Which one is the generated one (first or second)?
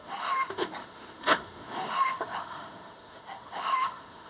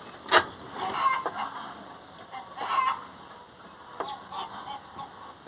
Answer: first